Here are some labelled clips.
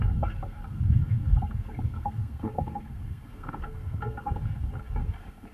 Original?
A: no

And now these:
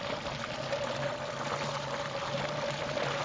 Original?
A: yes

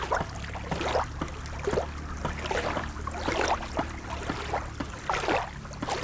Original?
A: yes